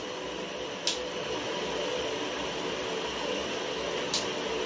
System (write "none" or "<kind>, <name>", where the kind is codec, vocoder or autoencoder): none